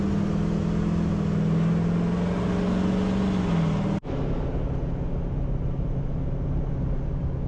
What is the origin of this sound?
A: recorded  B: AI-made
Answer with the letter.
A